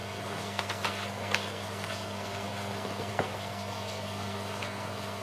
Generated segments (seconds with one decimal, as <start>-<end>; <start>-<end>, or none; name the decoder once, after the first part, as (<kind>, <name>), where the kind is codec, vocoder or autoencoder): 0.0-5.2 (codec, SNAC)